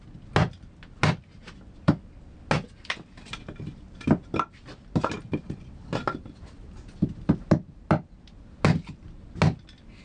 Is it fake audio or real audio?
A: real